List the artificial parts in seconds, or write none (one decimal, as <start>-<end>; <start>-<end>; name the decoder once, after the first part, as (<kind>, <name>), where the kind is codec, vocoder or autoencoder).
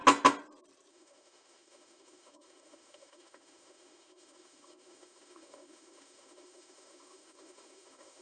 0.9-8.2 (autoencoder, DAC-VAE)